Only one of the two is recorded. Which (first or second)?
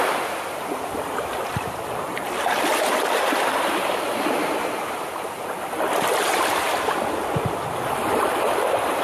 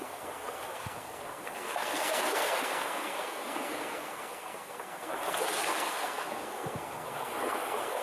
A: first